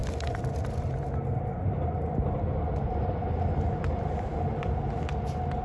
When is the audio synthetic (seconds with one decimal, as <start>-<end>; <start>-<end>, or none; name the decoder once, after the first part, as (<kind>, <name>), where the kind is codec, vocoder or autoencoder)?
none